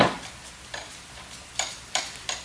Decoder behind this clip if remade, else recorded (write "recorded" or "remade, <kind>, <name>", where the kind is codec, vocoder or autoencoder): recorded